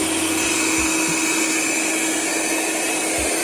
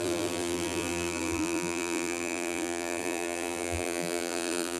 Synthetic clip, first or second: second